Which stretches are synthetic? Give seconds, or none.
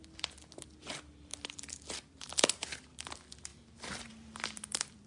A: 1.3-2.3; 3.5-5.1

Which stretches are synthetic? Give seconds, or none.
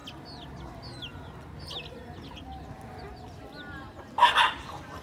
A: none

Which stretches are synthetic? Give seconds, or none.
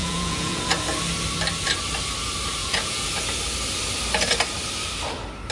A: 0.0-0.6; 2.6-3.1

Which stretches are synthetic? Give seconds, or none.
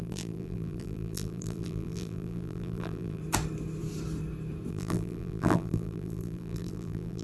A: 0.0-3.2; 4.7-7.2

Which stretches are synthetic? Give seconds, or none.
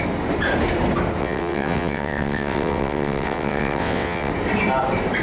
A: 1.2-4.3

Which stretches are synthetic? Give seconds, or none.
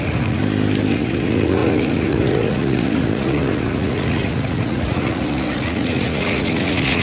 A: 0.0-0.4; 0.9-7.0